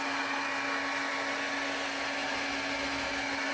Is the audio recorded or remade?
recorded